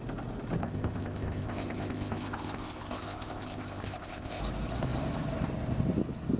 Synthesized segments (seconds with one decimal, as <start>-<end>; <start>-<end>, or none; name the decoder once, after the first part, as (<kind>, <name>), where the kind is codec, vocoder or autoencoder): 0.6-4.4 (codec, ZipCodec)